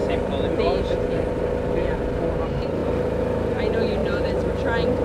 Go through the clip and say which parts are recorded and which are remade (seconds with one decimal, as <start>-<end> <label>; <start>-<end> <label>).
0.0-4.0 recorded; 4.0-4.5 remade; 4.5-5.0 recorded